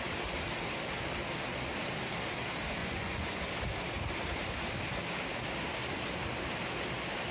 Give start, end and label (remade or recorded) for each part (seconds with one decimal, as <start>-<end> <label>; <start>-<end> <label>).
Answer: 0.0-2.8 recorded; 2.8-3.4 remade; 3.4-7.3 recorded

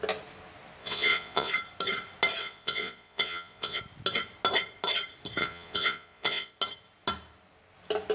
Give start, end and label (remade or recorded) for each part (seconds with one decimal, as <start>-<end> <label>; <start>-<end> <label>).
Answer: 0.0-0.8 recorded; 0.8-1.5 remade; 1.5-2.4 recorded; 2.4-3.8 remade; 3.8-5.4 recorded; 5.4-6.5 remade; 6.5-8.1 recorded

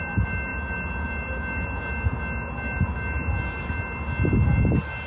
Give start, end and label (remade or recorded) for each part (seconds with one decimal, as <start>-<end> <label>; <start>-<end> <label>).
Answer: 0.0-5.1 recorded

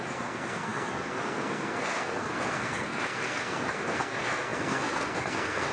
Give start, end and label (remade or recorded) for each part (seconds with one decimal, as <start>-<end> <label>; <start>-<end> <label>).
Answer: 0.0-5.7 remade

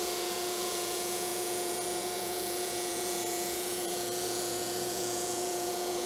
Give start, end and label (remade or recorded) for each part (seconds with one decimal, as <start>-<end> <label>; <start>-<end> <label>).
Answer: 0.0-6.1 remade

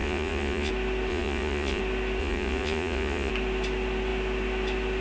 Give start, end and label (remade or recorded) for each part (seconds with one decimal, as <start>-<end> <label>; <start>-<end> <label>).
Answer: 0.0-0.7 remade; 0.7-1.1 recorded; 1.1-1.8 remade; 1.8-2.2 recorded; 2.2-3.3 remade; 3.3-5.0 recorded

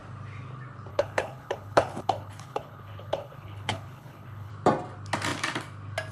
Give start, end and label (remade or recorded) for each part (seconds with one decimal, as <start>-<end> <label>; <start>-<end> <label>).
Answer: 0.0-0.9 recorded; 0.9-4.5 remade; 4.5-6.1 recorded